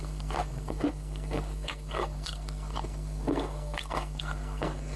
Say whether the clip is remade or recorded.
remade